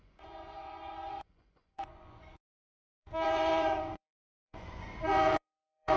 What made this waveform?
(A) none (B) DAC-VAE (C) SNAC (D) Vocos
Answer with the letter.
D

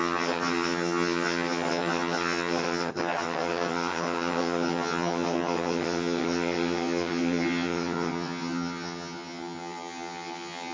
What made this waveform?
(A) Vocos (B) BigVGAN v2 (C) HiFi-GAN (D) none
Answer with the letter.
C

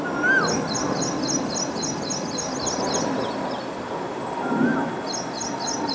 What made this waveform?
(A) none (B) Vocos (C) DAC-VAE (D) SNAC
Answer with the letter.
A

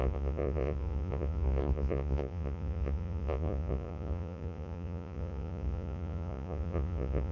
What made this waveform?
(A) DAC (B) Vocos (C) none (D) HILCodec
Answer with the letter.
B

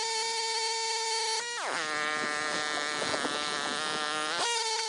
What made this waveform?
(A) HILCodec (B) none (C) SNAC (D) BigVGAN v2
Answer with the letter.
B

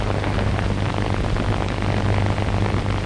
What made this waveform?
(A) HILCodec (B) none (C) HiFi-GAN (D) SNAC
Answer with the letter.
B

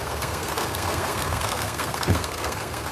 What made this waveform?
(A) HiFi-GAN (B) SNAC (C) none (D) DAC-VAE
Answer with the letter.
B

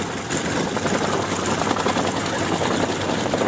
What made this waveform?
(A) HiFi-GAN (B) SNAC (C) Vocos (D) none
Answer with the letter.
D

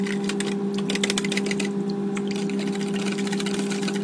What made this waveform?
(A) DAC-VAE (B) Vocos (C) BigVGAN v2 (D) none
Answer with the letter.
D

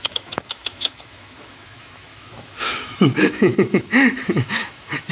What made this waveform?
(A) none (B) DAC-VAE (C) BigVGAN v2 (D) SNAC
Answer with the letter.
B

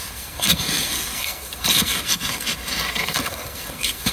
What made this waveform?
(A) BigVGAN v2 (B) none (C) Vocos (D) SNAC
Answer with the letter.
D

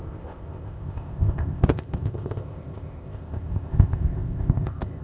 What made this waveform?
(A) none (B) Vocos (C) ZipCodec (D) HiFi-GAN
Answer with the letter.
C